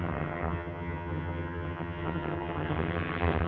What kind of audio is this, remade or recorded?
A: remade